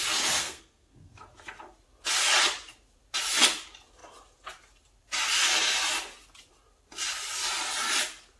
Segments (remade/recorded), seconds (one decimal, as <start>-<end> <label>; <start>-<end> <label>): 0.0-0.4 recorded; 0.4-1.2 remade; 1.2-8.4 recorded